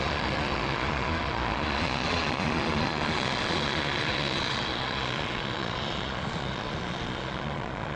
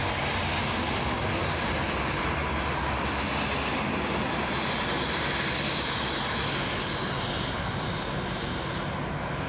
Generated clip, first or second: first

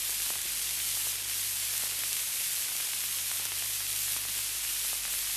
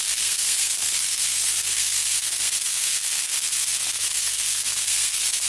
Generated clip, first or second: second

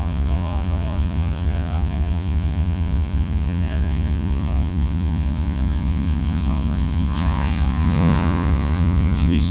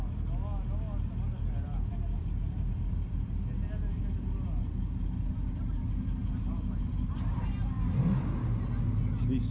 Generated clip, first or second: first